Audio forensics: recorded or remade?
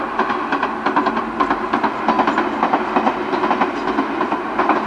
recorded